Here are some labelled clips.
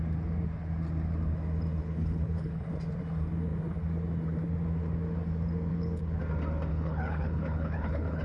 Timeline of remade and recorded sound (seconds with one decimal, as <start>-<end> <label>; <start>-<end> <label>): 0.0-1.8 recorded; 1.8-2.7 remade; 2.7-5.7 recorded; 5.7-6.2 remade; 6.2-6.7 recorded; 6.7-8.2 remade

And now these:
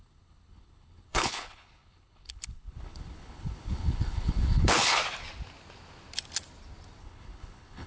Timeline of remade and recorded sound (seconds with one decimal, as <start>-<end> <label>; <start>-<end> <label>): 0.0-5.0 remade; 5.0-7.0 recorded; 7.0-7.9 remade

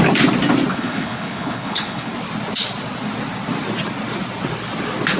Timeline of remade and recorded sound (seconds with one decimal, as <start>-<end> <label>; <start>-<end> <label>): 0.0-0.7 recorded; 0.7-2.1 remade; 2.1-5.2 recorded

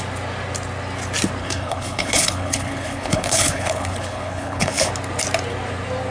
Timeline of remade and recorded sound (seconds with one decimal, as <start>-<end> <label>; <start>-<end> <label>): 0.0-1.4 recorded; 1.4-4.9 remade; 4.9-6.1 recorded

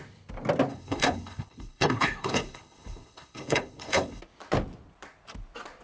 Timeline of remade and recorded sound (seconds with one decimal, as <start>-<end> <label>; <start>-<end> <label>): 0.0-0.7 recorded; 0.7-4.2 remade; 4.2-5.8 recorded

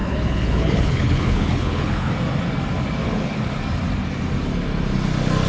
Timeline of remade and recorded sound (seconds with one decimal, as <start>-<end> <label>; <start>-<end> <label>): 0.0-2.1 remade; 2.1-3.0 recorded; 3.0-3.6 remade; 3.6-5.5 recorded